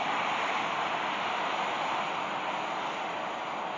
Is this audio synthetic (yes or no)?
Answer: no